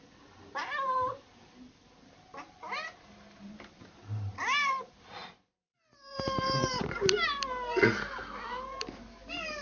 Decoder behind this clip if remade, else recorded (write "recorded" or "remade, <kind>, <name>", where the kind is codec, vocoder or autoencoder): remade, vocoder, BigVGAN v2